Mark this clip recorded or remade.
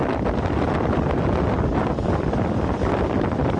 recorded